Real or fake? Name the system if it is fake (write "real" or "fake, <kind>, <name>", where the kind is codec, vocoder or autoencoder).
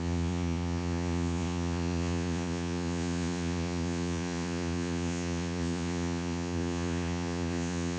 fake, vocoder, Vocos